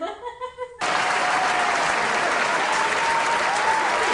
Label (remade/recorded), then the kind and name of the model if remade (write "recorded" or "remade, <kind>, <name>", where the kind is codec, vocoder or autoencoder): recorded